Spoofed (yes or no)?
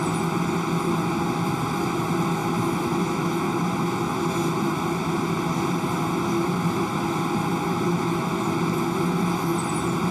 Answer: no